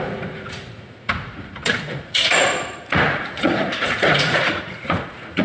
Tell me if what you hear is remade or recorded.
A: remade